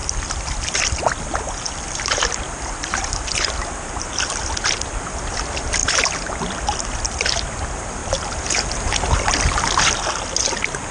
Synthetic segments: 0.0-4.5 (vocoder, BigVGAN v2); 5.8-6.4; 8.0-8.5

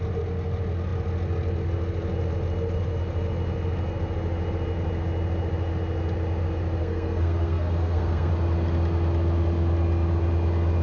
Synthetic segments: 6.8-8.3 (codec, SNAC)

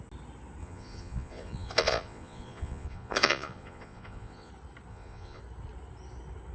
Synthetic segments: 0.6-4.5 (vocoder, Vocos); 4.9-5.4

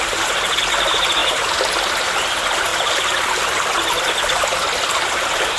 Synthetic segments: 2.7-5.6 (vocoder, BigVGAN v2)

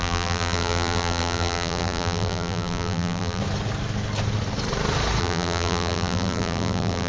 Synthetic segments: 0.0-3.4 (vocoder, BigVGAN v2); 5.2-7.1